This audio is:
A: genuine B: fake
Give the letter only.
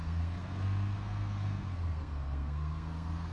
B